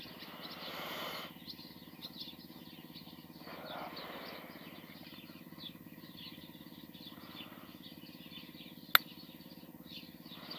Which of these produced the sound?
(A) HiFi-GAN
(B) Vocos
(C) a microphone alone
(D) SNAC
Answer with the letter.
C